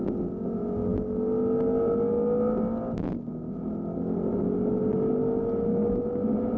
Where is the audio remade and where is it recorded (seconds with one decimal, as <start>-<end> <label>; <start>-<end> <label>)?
0.0-6.6 recorded